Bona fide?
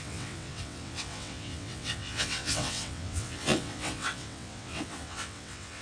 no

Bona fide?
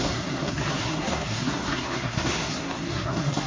no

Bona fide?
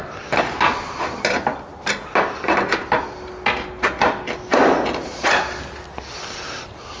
yes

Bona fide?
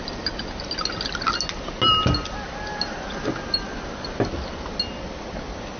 yes